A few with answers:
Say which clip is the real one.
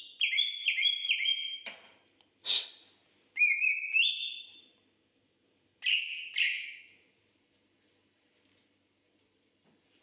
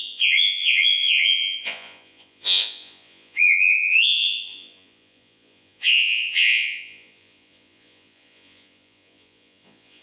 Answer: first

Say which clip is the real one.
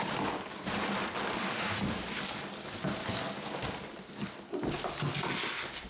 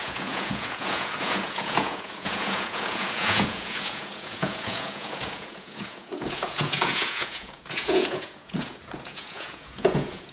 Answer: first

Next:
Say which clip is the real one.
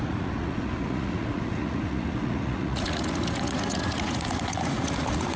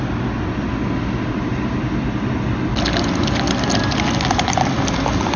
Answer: second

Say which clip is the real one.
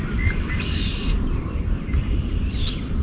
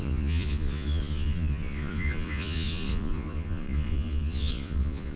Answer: first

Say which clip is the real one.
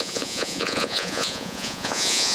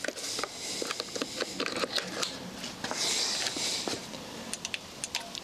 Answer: second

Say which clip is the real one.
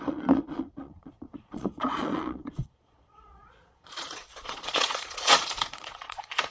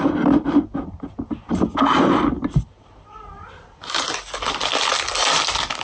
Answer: second